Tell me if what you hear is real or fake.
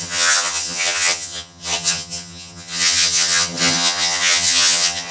fake